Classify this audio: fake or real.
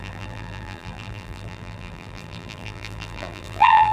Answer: fake